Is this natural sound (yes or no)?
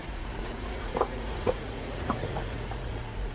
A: no